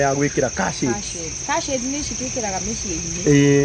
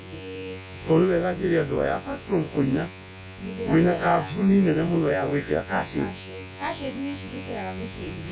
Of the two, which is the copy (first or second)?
second